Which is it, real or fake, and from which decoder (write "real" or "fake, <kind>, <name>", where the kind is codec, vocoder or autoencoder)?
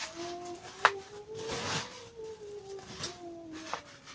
real